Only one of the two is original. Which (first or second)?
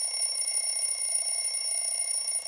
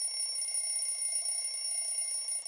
second